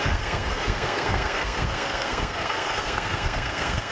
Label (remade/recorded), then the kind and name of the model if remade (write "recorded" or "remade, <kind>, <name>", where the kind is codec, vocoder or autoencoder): remade, codec, SNAC